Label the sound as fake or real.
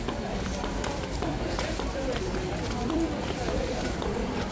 fake